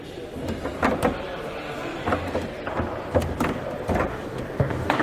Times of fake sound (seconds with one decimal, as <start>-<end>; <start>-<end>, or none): 4.1-5.0